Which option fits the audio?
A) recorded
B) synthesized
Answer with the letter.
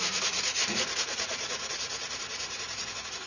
B